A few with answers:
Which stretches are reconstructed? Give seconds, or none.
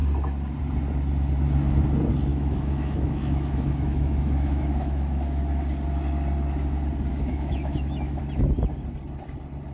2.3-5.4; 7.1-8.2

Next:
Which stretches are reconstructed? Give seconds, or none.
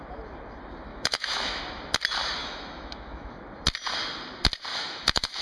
0.9-1.6; 2.4-3.3; 4.7-5.4